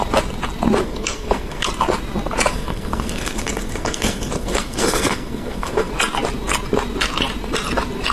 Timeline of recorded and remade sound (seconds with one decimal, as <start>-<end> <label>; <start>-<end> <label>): 0.0-0.8 recorded; 0.8-1.7 remade; 1.7-2.5 recorded; 2.5-5.9 remade; 5.9-8.1 recorded